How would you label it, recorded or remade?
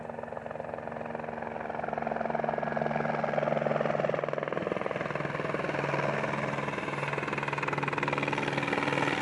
recorded